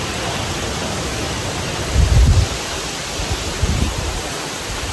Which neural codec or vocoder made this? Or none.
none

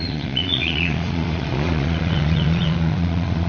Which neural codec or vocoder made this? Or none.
vocoder, Vocos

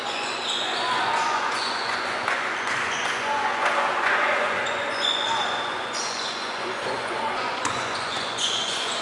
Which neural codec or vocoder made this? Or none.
vocoder, Vocos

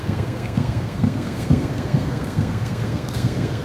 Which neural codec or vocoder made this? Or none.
codec, SNAC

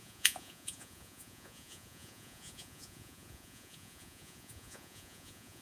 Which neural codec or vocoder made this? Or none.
vocoder, Vocos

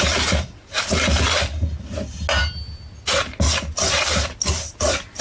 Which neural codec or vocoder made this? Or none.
none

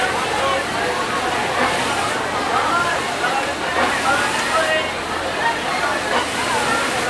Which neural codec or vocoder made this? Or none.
none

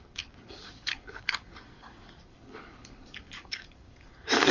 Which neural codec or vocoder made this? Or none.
codec, DAC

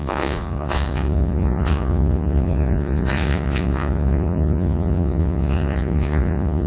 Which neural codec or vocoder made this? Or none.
vocoder, Vocos